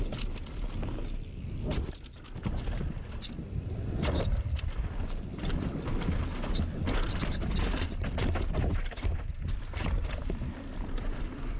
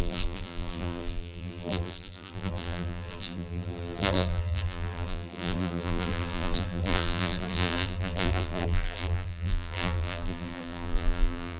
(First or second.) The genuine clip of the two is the first